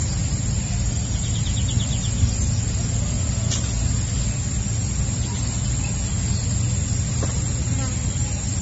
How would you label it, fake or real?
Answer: real